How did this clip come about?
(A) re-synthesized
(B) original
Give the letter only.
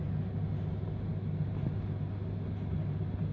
B